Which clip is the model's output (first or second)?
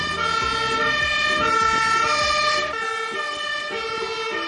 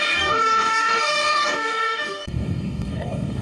second